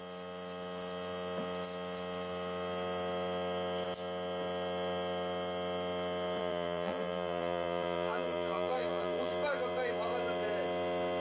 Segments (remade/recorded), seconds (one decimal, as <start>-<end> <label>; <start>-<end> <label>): 0.0-6.4 recorded; 6.4-9.3 remade; 9.3-11.2 recorded